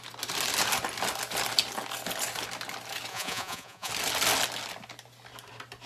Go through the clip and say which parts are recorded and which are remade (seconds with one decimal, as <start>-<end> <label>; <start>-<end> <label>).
0.0-3.1 recorded; 3.1-3.9 remade; 3.9-5.9 recorded